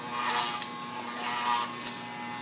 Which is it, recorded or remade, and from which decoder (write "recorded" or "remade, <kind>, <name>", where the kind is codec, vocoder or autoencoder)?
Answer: recorded